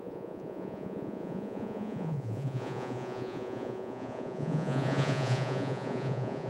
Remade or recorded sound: remade